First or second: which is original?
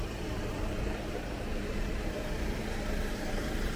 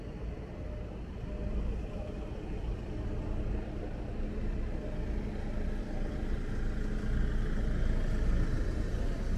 second